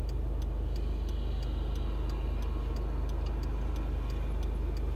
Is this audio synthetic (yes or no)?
no